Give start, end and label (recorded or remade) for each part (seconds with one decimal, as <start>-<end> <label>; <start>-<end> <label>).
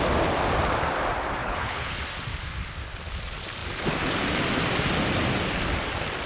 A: 0.0-1.4 recorded; 1.4-2.0 remade; 2.0-6.3 recorded